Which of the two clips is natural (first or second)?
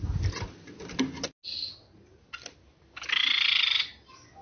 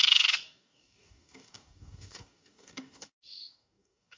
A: first